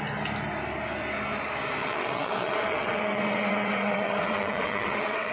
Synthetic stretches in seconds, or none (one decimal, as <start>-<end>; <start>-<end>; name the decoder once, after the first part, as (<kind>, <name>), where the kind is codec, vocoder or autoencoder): 1.8-5.3 (vocoder, WaveNeXt)